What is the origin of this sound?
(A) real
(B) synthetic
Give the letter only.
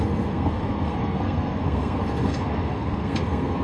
B